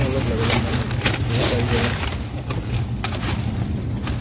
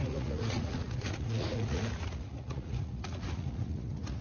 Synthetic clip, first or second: second